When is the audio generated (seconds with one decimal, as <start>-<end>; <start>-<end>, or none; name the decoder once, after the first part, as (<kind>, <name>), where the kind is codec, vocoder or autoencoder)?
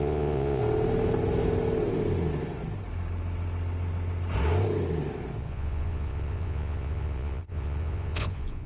0.0-0.6 (vocoder, Vocos); 5.4-8.7